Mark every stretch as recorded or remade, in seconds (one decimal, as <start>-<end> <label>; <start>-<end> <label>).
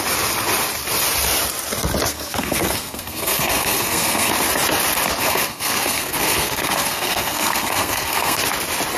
0.0-2.1 recorded; 2.1-4.3 remade; 4.3-5.2 recorded; 5.2-8.4 remade; 8.4-9.0 recorded